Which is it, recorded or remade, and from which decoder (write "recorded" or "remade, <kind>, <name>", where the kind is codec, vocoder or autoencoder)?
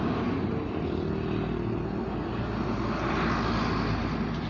recorded